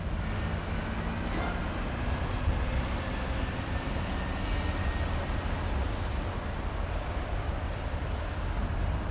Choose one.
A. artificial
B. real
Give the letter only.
B